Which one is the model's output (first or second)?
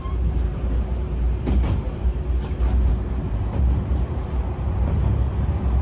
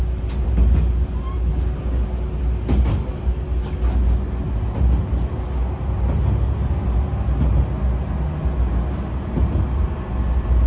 first